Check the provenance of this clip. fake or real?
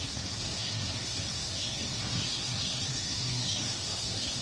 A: fake